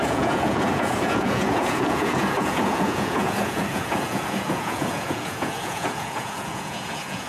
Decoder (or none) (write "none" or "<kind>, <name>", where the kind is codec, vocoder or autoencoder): vocoder, Vocos